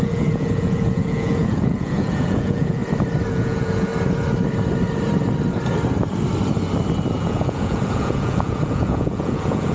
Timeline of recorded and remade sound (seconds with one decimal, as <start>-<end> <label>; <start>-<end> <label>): 0.0-2.8 remade; 2.8-3.3 recorded; 3.3-3.9 remade; 3.9-7.1 recorded; 7.1-9.7 remade